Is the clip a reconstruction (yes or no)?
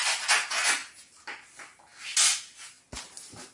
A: no